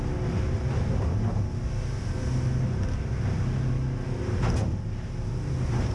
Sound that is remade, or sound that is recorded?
recorded